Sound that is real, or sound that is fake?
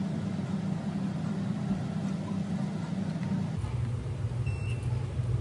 real